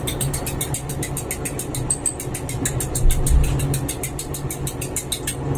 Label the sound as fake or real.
real